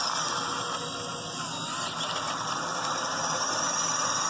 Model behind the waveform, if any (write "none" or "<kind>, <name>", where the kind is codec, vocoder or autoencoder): none